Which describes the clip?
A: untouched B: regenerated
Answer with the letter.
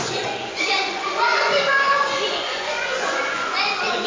B